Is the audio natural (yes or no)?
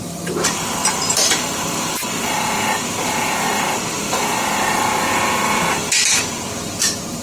no